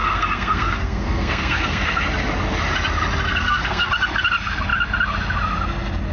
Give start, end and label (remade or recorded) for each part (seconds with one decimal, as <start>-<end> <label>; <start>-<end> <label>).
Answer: 0.0-2.0 remade; 2.0-3.3 recorded; 3.3-3.9 remade; 3.9-6.1 recorded